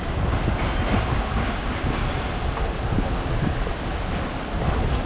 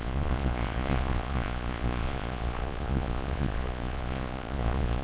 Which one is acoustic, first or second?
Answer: first